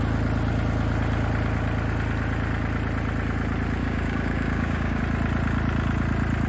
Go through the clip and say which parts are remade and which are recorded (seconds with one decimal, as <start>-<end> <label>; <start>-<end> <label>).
0.0-3.8 recorded; 3.8-5.0 remade; 5.0-6.5 recorded